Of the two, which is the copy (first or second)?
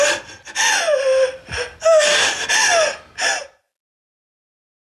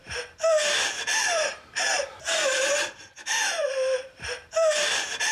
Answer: second